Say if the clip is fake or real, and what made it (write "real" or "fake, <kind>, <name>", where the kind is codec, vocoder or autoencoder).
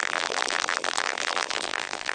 fake, vocoder, BigVGAN v2